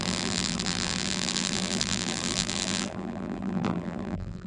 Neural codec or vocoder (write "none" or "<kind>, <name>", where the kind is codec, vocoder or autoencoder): vocoder, BigVGAN v2